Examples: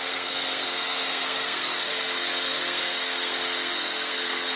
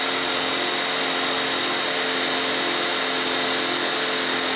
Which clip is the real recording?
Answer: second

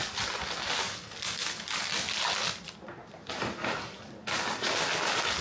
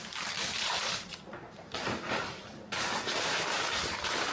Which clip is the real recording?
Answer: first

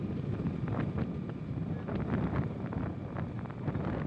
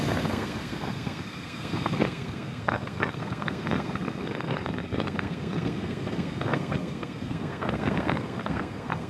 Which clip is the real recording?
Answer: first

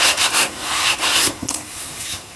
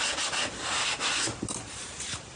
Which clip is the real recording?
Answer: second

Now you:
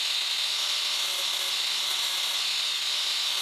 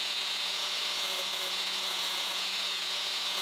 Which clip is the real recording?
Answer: first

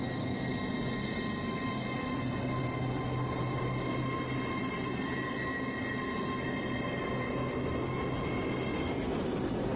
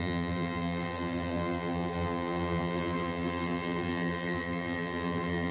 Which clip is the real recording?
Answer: first